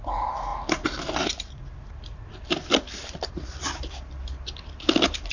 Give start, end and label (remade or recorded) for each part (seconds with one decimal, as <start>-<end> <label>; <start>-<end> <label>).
0.0-0.5 recorded; 0.5-3.3 remade; 3.3-5.3 recorded